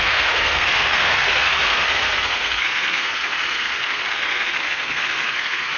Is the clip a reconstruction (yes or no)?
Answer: yes